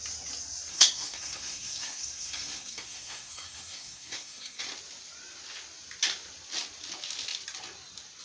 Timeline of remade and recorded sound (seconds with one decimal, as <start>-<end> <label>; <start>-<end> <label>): 0.0-0.7 recorded; 0.7-4.6 remade; 4.6-8.2 recorded